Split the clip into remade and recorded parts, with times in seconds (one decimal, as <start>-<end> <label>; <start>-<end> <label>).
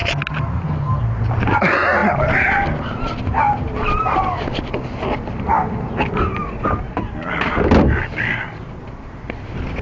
0.0-9.8 recorded